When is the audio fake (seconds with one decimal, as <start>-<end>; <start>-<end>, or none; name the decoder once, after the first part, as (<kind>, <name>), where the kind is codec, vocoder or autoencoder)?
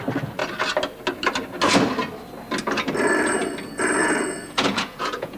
4.0-5.4 (vocoder, Vocos)